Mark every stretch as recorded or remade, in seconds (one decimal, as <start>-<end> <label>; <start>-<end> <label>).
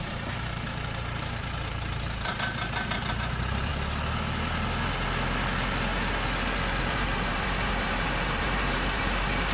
0.0-3.7 remade; 3.7-6.8 recorded; 6.8-9.5 remade